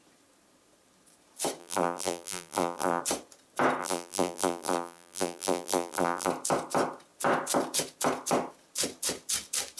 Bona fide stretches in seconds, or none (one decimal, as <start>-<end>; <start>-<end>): 0.0-1.6; 3.0-3.8; 6.3-9.8